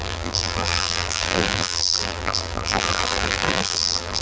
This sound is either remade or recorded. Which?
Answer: remade